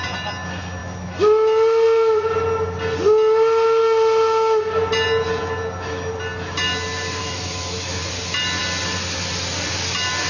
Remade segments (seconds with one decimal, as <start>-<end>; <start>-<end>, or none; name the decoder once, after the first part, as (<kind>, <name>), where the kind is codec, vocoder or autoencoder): 7.2-8.0 (autoencoder, DAC-VAE)